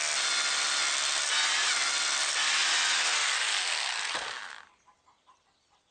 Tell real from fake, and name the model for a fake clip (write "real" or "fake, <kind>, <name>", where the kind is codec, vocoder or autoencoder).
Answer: real